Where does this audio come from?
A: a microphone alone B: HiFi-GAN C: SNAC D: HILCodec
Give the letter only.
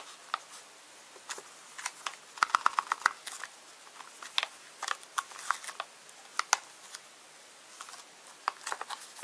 A